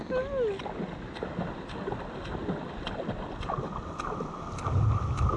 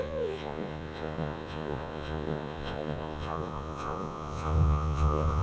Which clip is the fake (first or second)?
second